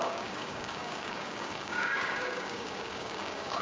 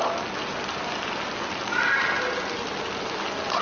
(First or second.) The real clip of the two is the second